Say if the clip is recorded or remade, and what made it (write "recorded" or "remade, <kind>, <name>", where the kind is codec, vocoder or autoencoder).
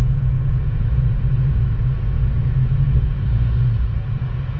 remade, vocoder, Vocos